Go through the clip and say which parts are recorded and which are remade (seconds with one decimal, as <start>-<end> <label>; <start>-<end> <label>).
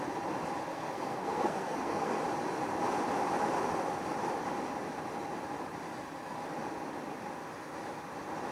0.0-0.7 recorded; 0.7-2.2 remade; 2.2-8.5 recorded